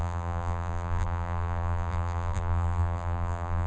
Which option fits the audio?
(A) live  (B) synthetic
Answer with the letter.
B